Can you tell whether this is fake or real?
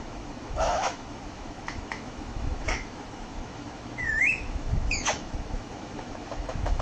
fake